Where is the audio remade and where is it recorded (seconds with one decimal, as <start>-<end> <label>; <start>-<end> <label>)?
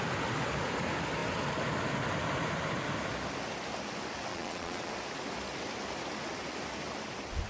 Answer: 0.0-4.3 recorded; 4.3-4.9 remade; 4.9-7.5 recorded